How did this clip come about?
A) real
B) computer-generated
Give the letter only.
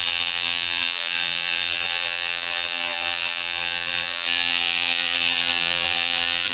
B